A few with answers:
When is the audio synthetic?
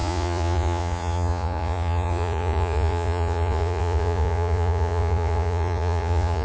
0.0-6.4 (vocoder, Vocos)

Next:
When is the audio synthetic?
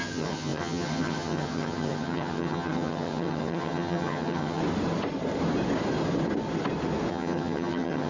0.0-4.6 (vocoder, HiFi-GAN); 7.1-8.1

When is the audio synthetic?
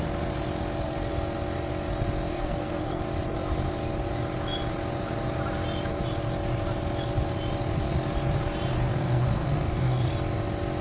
2.3-3.0 (codec, SNAC); 8.9-10.1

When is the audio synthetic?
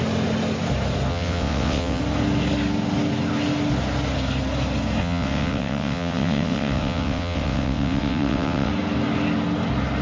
1.1-2.0 (vocoder, WaveNeXt); 5.0-8.7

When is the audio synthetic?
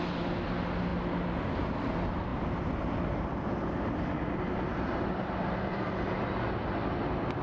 4.7-6.3 (vocoder, BigVGAN v2)